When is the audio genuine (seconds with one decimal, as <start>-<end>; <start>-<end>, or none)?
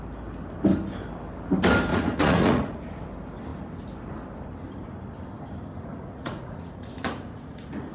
0.0-1.9; 2.8-5.7